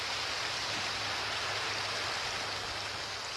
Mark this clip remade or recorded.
recorded